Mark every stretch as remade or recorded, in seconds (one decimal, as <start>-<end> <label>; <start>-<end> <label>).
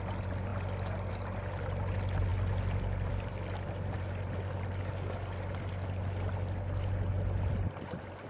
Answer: 0.0-8.3 recorded